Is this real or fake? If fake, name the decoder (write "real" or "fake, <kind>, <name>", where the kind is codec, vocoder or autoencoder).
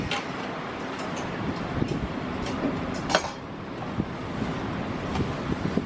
fake, vocoder, BigVGAN v2